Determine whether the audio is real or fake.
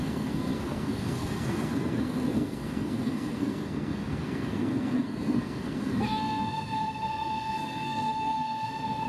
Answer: fake